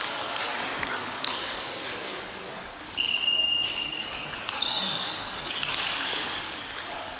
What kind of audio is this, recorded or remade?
remade